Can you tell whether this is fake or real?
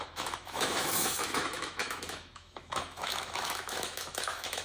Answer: fake